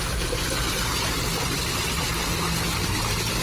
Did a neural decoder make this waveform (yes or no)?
no